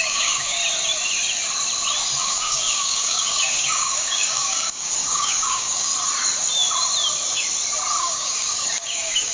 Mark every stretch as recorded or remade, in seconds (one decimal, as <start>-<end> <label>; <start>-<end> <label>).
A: 0.0-0.6 remade; 0.6-2.2 recorded; 2.2-5.9 remade; 5.9-8.0 recorded; 8.0-9.3 remade